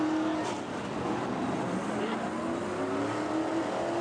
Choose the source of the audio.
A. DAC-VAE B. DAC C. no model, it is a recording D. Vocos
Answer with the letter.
C